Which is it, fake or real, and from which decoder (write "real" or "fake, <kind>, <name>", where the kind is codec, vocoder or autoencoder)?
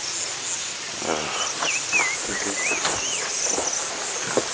real